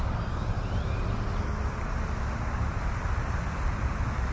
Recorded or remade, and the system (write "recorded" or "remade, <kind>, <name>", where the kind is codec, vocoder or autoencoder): recorded